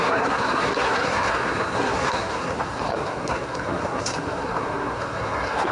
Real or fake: fake